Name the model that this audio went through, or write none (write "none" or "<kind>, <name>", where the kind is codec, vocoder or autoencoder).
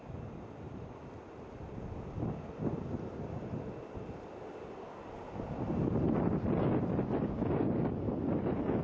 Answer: none